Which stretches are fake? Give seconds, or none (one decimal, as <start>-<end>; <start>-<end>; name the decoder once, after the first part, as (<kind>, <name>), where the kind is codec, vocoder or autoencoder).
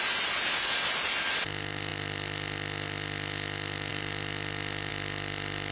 none